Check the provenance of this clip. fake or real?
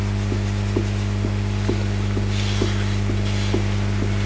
real